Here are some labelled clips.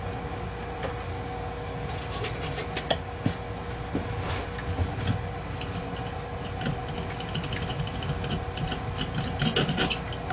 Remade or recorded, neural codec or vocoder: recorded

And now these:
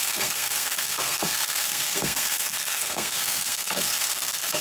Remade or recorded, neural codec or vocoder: remade, codec, SNAC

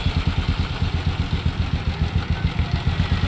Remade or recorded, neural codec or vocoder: recorded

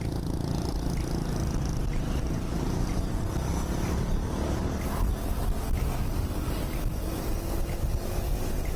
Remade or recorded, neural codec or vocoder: recorded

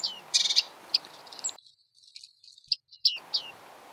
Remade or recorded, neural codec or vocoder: recorded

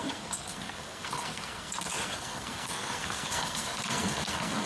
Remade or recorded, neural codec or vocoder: remade, codec, SNAC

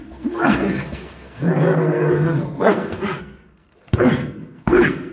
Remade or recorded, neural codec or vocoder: remade, codec, SNAC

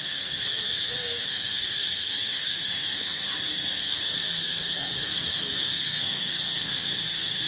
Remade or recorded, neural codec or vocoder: remade, codec, SNAC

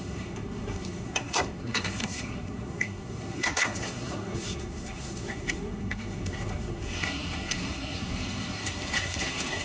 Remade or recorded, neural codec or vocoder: remade, codec, SNAC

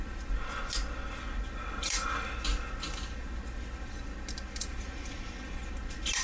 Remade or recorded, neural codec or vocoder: recorded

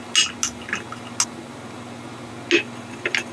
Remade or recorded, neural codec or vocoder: recorded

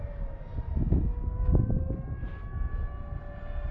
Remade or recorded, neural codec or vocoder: recorded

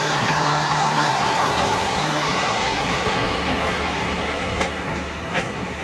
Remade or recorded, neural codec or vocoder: remade, codec, SNAC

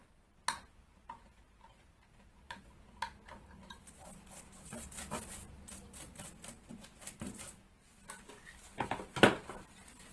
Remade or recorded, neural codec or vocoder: recorded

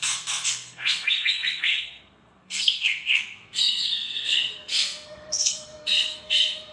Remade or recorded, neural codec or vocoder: remade, codec, SNAC